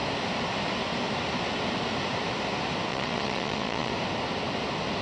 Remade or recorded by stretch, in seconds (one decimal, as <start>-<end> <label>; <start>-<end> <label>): 0.0-2.9 recorded; 2.9-3.9 remade; 3.9-5.0 recorded